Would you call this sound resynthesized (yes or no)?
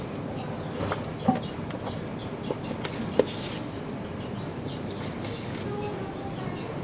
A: no